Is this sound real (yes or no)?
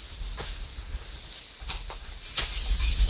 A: yes